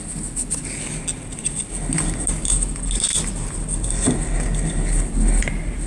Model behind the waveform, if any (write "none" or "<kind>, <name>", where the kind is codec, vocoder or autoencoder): none